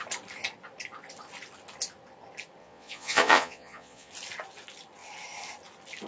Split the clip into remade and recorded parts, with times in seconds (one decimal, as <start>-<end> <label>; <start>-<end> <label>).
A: 0.0-2.6 recorded; 2.6-4.1 remade; 4.1-6.1 recorded